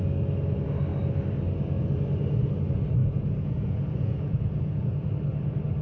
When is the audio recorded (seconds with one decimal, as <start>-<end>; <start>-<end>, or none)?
0.0-3.0; 5.1-5.8